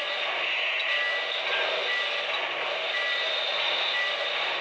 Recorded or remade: recorded